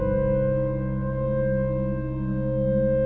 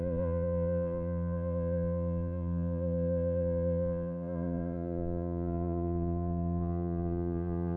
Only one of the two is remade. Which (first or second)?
second